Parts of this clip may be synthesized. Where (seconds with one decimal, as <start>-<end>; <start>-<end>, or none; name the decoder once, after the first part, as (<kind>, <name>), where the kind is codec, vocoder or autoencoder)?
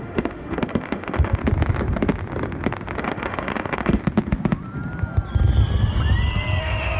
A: 0.0-1.4 (autoencoder, DAC-VAE); 3.0-4.0; 6.6-7.0